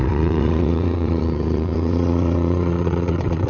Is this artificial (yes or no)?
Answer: yes